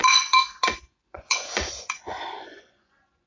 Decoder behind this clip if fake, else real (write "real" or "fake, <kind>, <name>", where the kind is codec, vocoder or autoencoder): fake, vocoder, Vocos